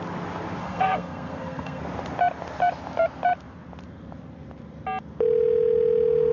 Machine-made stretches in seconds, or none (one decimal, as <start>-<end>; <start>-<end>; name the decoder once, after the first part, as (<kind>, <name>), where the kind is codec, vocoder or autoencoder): 0.6-1.8 (codec, SNAC)